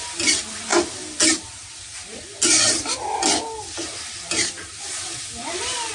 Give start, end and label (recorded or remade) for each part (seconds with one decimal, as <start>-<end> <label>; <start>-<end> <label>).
0.0-5.9 recorded